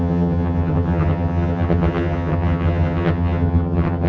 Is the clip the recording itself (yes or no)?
no